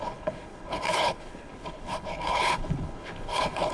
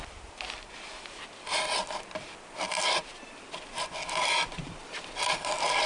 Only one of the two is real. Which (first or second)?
second